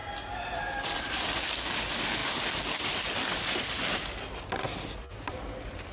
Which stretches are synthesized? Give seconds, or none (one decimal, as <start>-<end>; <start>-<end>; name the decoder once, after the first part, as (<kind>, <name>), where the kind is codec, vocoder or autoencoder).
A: 0.0-1.4 (vocoder, BigVGAN v2)